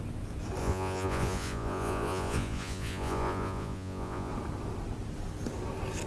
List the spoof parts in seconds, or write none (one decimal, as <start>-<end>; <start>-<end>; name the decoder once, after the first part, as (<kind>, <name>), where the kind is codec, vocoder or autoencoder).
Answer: 0.6-4.3 (vocoder, Vocos)